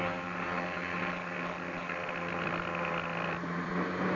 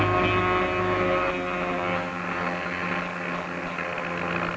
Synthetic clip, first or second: first